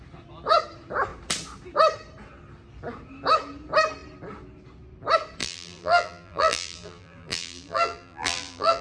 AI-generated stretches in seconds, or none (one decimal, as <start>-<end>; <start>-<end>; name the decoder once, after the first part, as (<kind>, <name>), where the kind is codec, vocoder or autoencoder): 5.4-8.8 (vocoder, BigVGAN v2)